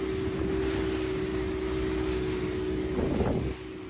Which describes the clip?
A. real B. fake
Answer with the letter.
A